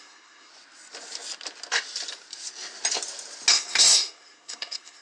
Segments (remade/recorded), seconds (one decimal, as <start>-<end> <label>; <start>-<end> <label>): 0.0-0.5 remade; 0.5-3.5 recorded; 3.5-5.0 remade